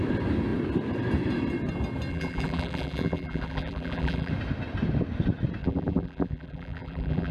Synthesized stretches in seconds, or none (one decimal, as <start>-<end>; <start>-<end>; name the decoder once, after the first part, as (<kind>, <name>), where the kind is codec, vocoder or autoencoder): 2.1-4.3 (vocoder, BigVGAN v2); 5.6-7.3